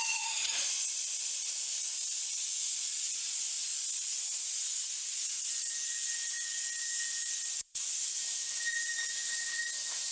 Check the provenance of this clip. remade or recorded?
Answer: remade